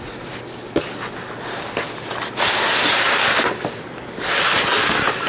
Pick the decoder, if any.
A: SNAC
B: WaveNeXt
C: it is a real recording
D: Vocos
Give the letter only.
C